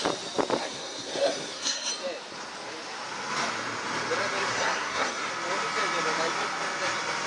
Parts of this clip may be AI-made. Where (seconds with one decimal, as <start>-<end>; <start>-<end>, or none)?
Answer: 0.6-1.9; 4.5-5.3